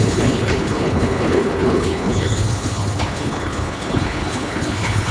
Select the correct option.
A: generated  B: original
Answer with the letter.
A